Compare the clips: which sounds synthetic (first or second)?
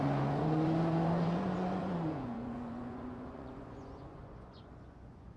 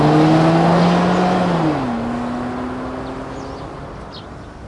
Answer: first